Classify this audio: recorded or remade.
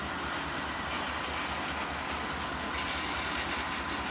recorded